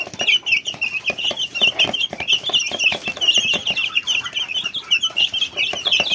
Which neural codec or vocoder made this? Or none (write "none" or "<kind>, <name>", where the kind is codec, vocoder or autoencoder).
none